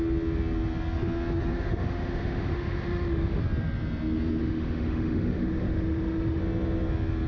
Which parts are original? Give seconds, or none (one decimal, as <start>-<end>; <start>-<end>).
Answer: 0.0-1.5; 3.4-4.4; 6.4-7.3